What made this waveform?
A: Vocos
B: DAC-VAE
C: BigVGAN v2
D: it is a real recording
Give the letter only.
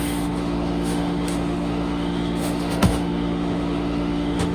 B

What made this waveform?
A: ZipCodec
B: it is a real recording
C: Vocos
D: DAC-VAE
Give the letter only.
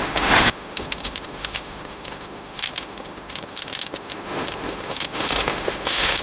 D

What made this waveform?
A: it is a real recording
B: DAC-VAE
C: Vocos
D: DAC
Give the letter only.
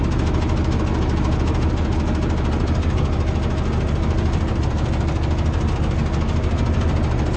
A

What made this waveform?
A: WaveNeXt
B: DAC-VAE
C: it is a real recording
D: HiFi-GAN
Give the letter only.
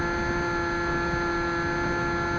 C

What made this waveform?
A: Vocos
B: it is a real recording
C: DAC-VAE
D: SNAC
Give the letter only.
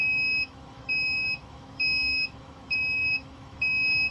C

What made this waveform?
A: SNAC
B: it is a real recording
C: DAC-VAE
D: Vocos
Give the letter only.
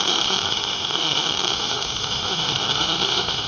C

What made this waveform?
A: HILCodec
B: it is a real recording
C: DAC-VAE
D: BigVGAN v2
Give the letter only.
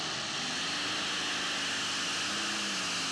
B